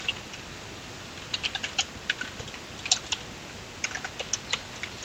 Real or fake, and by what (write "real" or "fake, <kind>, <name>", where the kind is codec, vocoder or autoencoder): real